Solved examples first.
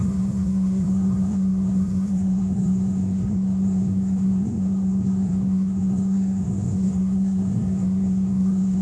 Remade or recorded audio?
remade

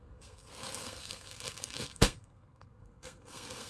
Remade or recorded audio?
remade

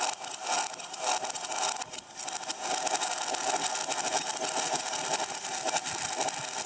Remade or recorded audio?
recorded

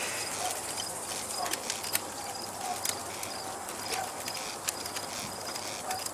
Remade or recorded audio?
recorded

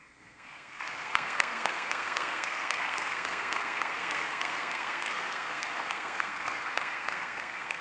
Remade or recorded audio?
remade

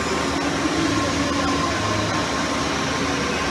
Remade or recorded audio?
recorded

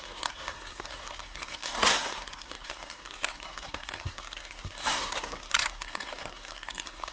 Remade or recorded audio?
remade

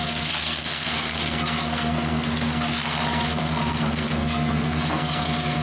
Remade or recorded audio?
remade